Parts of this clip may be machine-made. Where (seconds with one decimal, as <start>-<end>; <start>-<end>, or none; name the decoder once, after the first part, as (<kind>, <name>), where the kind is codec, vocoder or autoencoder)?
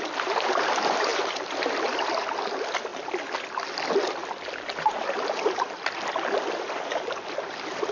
1.1-2.1 (vocoder, BigVGAN v2)